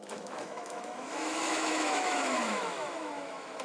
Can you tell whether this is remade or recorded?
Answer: remade